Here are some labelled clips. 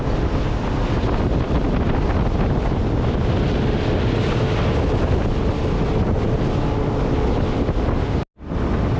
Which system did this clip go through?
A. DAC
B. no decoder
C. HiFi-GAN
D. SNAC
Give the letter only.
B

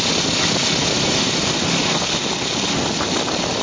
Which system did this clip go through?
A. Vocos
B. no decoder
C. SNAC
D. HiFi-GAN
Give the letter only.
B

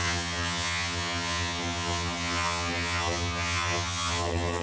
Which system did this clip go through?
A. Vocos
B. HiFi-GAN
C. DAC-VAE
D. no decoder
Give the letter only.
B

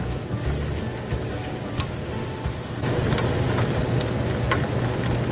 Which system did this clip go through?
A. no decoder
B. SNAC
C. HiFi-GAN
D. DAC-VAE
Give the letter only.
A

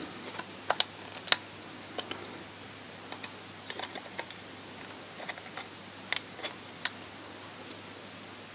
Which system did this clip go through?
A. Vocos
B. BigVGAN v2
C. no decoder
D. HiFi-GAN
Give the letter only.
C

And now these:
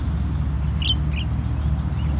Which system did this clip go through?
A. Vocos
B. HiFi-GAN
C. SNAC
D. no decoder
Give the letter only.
D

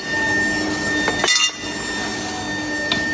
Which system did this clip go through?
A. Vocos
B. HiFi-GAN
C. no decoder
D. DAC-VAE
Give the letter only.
C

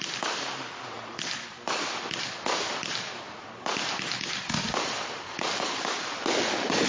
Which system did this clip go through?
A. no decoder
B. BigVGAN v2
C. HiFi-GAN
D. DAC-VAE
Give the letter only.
A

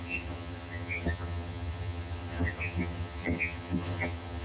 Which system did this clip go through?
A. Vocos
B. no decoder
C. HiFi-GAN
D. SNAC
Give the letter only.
C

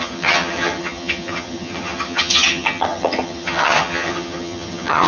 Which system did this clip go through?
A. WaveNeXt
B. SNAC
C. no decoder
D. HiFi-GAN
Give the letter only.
D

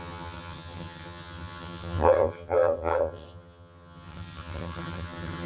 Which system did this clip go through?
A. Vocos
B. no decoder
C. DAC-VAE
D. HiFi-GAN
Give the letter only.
D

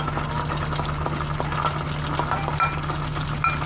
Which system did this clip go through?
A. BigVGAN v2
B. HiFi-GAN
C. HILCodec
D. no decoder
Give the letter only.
D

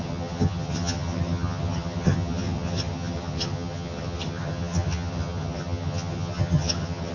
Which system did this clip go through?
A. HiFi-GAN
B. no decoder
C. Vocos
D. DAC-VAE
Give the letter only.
A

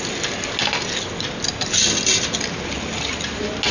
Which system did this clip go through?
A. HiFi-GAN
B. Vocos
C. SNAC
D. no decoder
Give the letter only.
D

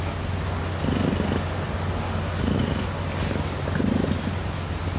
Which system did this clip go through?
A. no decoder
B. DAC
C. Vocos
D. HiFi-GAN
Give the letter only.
A